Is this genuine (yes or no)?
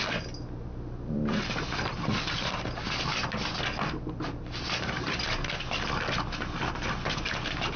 yes